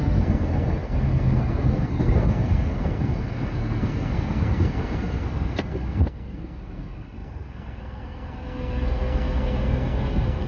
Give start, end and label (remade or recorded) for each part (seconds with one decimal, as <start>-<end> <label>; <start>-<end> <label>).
0.0-10.5 remade

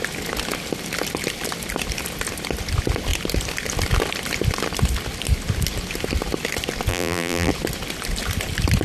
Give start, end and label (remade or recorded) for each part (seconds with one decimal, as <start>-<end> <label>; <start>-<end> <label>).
0.0-6.9 recorded; 6.9-7.5 remade; 7.5-8.8 recorded